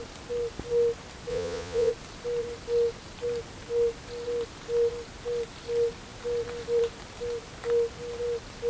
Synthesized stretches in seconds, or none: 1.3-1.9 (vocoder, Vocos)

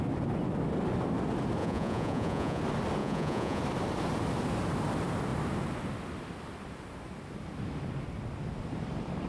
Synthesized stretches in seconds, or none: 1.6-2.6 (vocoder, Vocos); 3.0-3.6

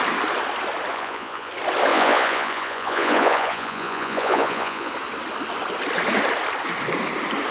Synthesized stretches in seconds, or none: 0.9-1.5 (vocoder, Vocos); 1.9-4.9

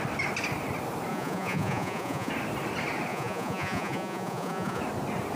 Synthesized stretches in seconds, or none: 1.1-2.3 (vocoder, Vocos); 3.1-4.8

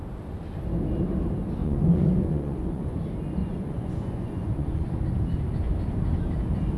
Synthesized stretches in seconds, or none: 1.6-3.0 (vocoder, Vocos); 3.4-5.0